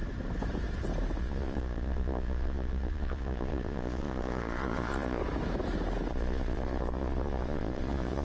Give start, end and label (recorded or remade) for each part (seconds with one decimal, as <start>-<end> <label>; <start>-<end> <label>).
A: 0.0-1.2 recorded; 1.2-5.2 remade; 5.2-6.1 recorded; 6.1-8.2 remade